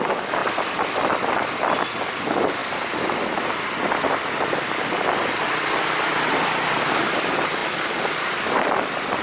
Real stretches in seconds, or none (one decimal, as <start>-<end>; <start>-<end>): 2.6-7.0